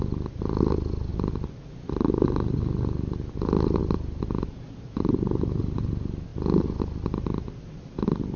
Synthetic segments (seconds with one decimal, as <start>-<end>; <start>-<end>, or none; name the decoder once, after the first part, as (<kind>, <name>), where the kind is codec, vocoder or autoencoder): none